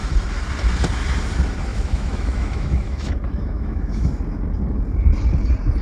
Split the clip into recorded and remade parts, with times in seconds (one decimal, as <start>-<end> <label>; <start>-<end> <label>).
0.0-1.7 recorded; 1.7-4.2 remade; 4.2-5.8 recorded

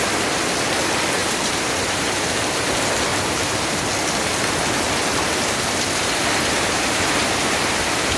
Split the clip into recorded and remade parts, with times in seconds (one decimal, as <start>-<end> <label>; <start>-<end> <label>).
0.0-1.2 recorded; 1.2-2.2 remade; 2.2-3.1 recorded; 3.1-3.9 remade; 3.9-6.2 recorded; 6.2-7.2 remade; 7.2-8.2 recorded

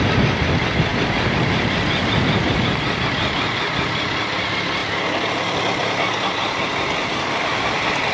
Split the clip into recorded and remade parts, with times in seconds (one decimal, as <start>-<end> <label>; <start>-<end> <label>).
0.0-0.9 recorded; 0.9-4.2 remade; 4.2-8.1 recorded

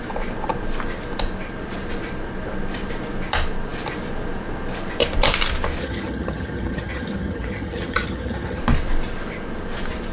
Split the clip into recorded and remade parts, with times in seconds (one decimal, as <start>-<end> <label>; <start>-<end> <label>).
0.0-5.8 recorded; 5.8-8.6 remade; 8.6-10.1 recorded